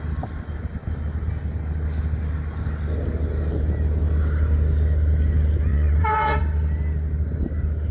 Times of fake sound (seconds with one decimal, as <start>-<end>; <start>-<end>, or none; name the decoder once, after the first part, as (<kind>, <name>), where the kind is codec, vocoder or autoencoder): 5.7-6.4 (vocoder, WaveNeXt)